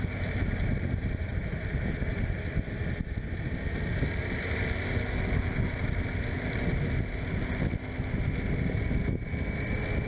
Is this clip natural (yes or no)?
yes